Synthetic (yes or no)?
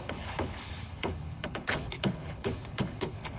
yes